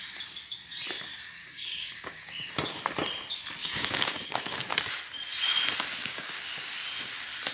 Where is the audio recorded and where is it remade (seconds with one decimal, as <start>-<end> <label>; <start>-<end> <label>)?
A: 0.0-1.4 recorded; 1.4-2.5 remade; 2.5-3.6 recorded; 3.6-4.7 remade; 4.7-6.0 recorded; 6.0-6.7 remade; 6.7-7.5 recorded